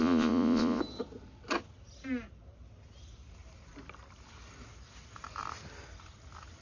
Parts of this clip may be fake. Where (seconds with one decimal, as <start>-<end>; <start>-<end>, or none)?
0.0-0.8